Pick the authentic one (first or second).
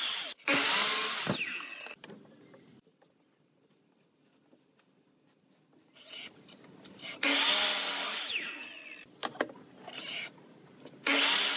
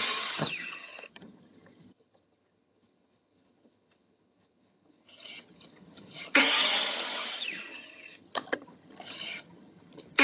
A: first